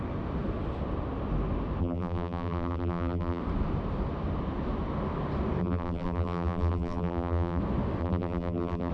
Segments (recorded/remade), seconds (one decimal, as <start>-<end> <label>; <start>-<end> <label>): 0.0-1.8 recorded; 1.8-3.4 remade; 3.4-5.6 recorded; 5.6-7.6 remade; 7.6-8.0 recorded; 8.0-8.9 remade